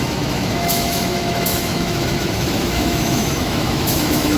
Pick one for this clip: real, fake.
fake